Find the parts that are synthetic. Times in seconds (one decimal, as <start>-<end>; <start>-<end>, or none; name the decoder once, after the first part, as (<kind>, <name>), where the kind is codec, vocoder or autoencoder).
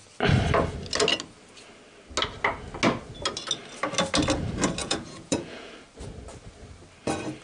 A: 4.8-5.7 (vocoder, Vocos)